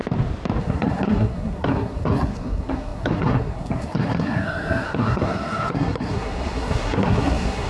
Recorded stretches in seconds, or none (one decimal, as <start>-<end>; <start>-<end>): 0.0-0.6